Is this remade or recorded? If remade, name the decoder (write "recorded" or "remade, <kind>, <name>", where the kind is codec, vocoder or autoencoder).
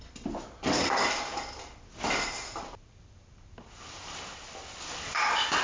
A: remade, vocoder, BigVGAN v2